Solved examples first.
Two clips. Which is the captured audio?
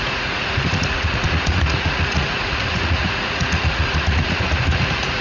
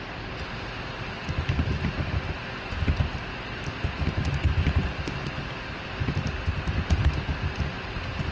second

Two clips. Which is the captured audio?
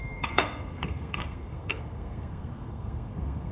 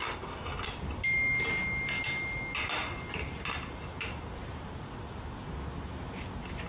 second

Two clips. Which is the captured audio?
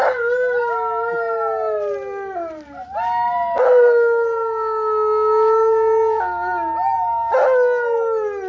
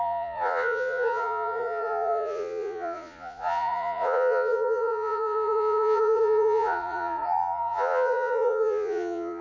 first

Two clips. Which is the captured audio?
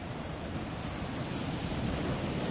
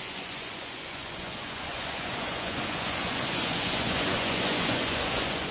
first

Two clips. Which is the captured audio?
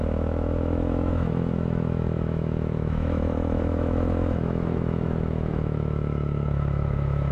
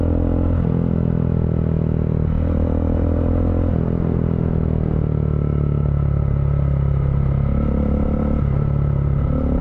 second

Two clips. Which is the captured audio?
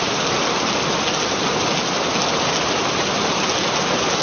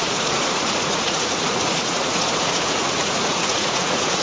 first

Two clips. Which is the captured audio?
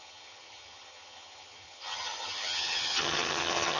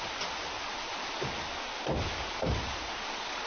second